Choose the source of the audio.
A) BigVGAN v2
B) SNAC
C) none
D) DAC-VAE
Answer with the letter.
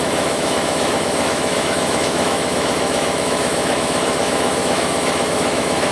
D